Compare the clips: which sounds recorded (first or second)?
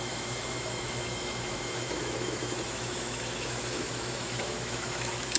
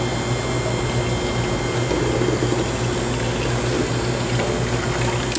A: second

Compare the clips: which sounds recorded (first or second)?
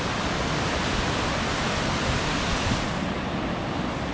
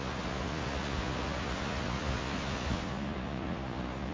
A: first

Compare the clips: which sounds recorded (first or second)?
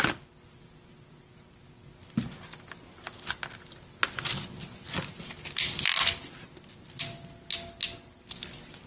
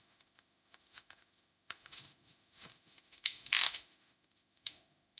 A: first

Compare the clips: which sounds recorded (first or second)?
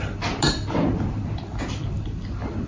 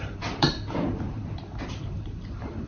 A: first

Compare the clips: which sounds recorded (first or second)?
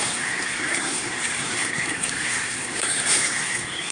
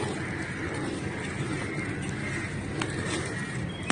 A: second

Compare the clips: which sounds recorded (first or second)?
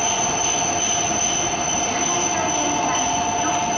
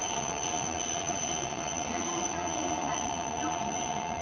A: first